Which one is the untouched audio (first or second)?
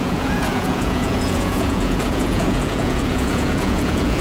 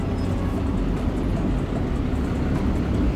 second